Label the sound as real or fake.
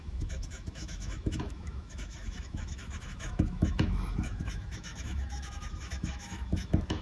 fake